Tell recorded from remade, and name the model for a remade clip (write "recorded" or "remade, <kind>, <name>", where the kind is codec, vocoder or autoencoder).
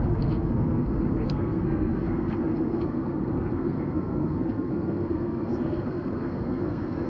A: remade, codec, SNAC